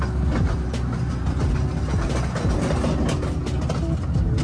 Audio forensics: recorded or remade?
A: recorded